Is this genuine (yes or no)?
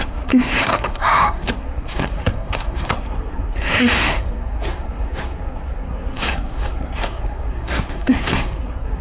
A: no